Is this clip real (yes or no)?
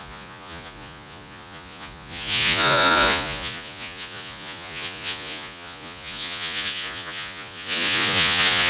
no